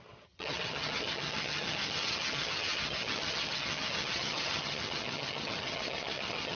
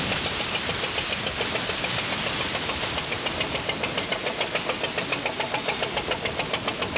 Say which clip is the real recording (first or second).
second